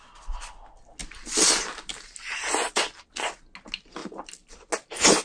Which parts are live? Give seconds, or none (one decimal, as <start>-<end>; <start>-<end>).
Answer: 0.0-1.0; 1.9-4.0; 4.7-5.2